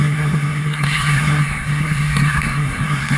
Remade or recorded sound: remade